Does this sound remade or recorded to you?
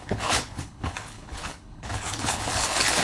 remade